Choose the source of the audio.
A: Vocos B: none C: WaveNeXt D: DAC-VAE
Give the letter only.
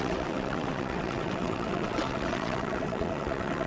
C